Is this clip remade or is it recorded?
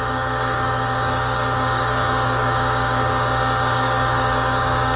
remade